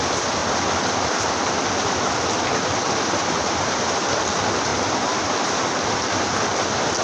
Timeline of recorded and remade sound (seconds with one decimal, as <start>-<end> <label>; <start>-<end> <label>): 0.0-2.8 recorded; 2.8-4.2 remade; 4.2-7.0 recorded